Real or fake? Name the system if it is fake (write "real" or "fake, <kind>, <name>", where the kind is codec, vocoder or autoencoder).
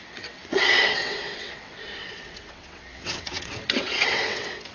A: fake, vocoder, WaveNeXt